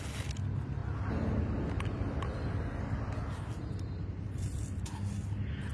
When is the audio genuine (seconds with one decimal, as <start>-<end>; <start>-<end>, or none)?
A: 0.0-5.7